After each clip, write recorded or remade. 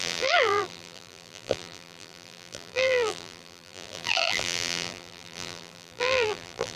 remade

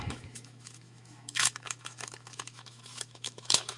remade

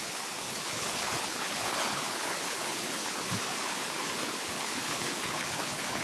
remade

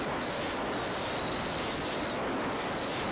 recorded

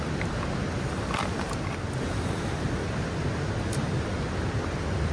recorded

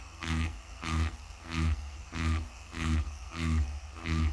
remade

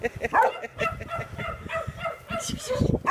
recorded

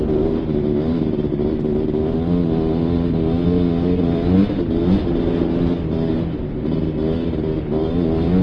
recorded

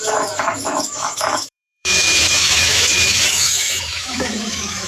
remade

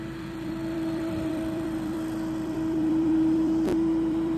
remade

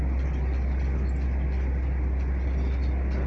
recorded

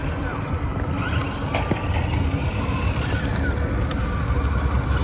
recorded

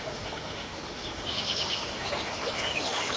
remade